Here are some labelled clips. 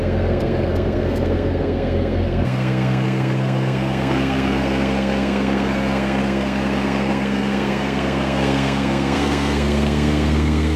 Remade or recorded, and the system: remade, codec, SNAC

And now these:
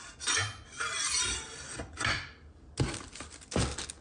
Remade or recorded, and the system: recorded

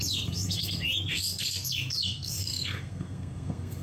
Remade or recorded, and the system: remade, codec, SNAC